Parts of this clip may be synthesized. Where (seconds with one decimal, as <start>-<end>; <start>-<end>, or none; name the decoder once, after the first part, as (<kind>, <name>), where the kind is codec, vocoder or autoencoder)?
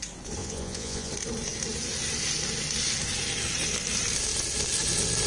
0.4-1.1 (vocoder, Vocos)